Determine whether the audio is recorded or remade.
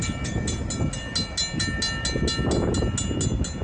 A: recorded